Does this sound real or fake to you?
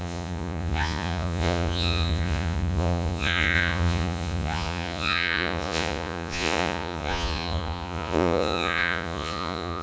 fake